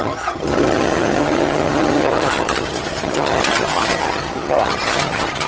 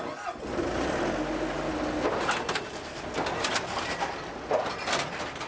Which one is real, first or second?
second